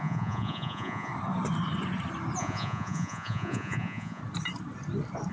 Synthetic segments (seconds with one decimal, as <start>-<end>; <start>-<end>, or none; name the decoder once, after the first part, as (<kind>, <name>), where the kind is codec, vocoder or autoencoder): 0.0-1.1 (vocoder, Vocos); 2.4-4.2